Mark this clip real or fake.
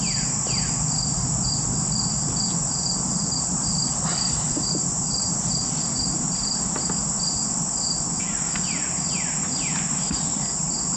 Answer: real